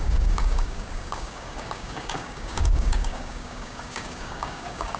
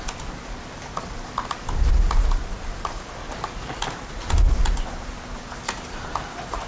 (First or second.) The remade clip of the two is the first